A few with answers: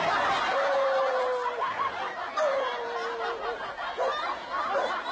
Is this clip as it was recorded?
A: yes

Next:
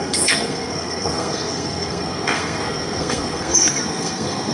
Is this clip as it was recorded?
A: no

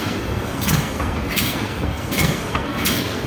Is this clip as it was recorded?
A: no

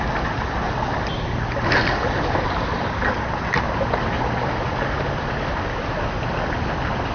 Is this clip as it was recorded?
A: yes